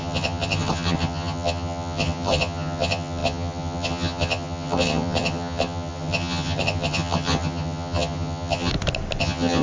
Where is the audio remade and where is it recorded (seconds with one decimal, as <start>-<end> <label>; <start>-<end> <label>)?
0.0-8.7 remade; 8.7-9.2 recorded; 9.2-9.6 remade